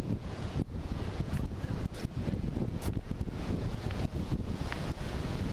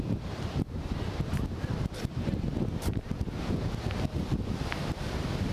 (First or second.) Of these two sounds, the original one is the second